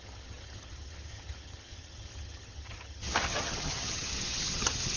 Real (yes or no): no